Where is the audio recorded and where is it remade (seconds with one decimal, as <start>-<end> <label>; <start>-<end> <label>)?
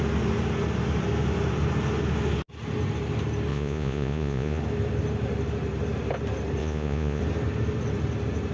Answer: 0.0-3.5 recorded; 3.5-4.6 remade; 4.6-6.6 recorded; 6.6-7.2 remade; 7.2-8.5 recorded